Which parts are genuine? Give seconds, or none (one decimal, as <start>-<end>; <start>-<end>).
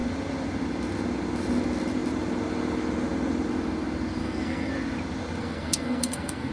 0.0-4.2; 4.7-5.4